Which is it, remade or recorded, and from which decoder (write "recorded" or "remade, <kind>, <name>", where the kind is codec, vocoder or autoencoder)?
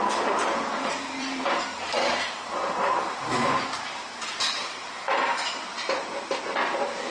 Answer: remade, vocoder, BigVGAN v2